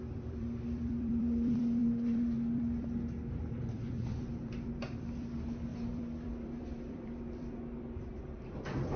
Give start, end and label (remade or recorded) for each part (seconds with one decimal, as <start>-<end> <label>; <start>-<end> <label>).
0.0-9.0 remade